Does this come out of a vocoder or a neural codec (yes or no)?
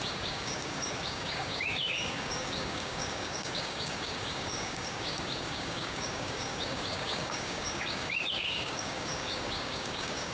yes